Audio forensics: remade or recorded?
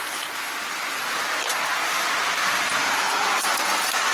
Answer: recorded